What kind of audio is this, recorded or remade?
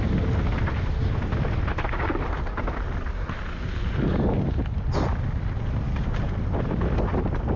recorded